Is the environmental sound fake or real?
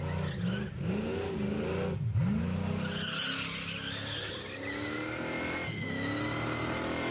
real